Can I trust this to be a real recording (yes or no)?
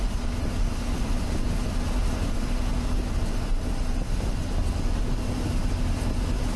yes